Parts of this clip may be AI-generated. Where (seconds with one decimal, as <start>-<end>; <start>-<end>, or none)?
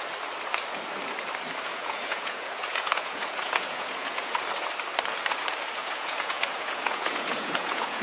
1.7-4.4; 5.8-8.0